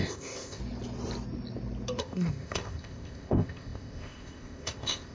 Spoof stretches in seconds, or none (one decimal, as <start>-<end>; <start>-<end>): 0.0-0.6; 2.0-5.1